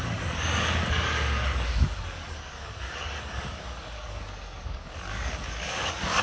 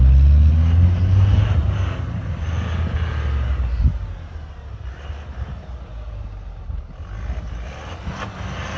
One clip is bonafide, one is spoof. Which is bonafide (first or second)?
second